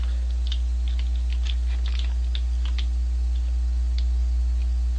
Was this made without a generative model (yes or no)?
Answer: yes